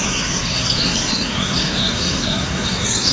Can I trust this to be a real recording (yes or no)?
no